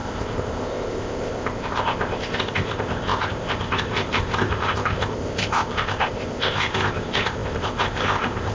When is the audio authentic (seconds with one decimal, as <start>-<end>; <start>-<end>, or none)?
none